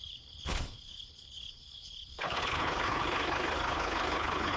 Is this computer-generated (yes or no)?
yes